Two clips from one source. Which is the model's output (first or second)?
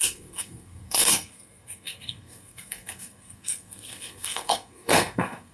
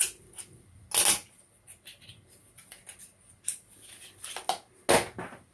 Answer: first